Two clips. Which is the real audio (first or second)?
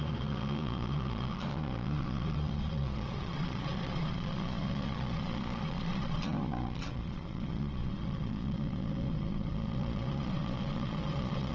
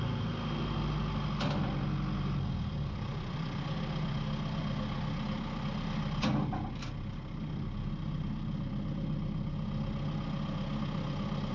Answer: second